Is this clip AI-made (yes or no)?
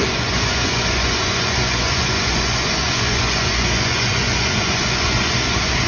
yes